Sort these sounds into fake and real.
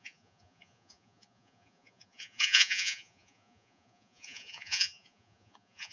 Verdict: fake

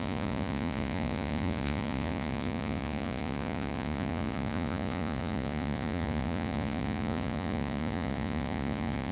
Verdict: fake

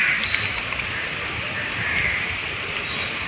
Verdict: real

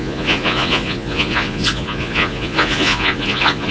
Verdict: fake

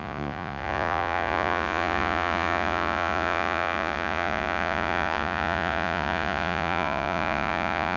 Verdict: fake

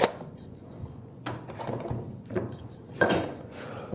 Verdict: fake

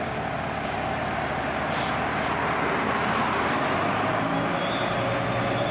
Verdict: real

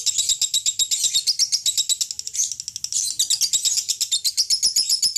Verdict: real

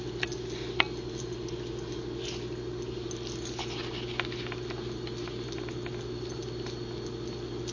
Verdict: real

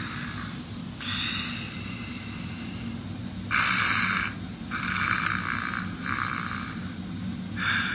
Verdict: real